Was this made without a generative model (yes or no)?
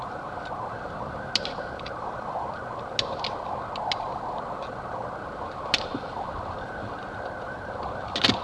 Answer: yes